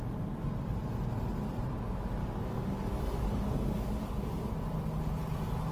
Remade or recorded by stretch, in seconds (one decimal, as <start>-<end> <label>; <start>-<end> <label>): 0.0-2.2 recorded; 2.2-4.5 remade; 4.5-5.7 recorded